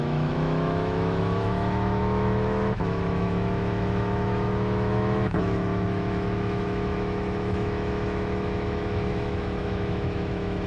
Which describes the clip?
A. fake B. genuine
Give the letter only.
A